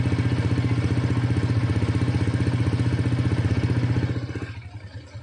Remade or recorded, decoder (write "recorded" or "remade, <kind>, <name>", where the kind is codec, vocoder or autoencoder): recorded